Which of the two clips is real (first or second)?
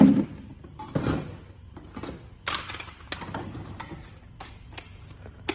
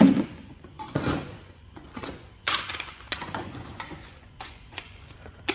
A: first